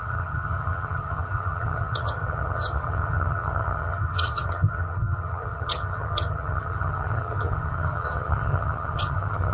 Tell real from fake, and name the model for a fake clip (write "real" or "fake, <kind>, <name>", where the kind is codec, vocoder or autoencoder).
fake, vocoder, HiFi-GAN